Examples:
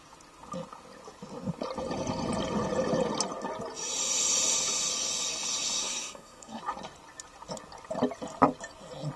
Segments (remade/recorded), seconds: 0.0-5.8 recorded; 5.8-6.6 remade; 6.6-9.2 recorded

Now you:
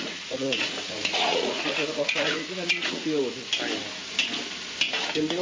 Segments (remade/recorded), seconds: 0.0-3.2 remade; 3.2-5.4 recorded

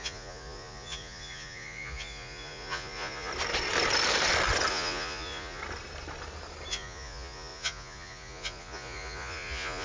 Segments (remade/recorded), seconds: 0.0-3.3 remade; 3.3-4.7 recorded; 4.7-5.6 remade; 5.6-6.7 recorded; 6.7-9.8 remade

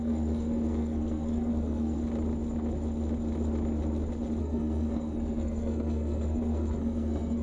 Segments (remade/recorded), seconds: 0.0-2.0 remade; 2.0-4.4 recorded; 4.4-7.4 remade

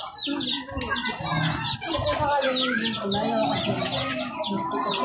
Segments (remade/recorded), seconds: 0.0-5.0 recorded

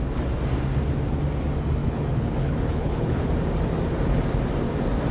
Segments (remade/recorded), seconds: 0.0-1.8 recorded; 1.8-3.3 remade; 3.3-5.1 recorded

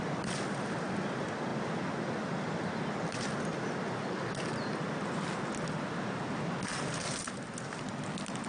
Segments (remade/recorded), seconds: 0.0-8.5 recorded

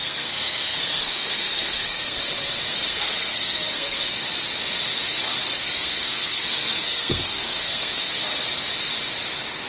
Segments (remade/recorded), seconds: 0.0-2.2 remade; 2.2-2.7 recorded; 2.7-4.0 remade; 4.0-5.5 recorded; 5.5-8.1 remade; 8.1-9.7 recorded